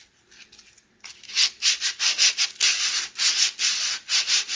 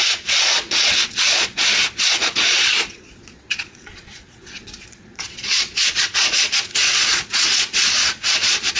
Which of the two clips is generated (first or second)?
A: second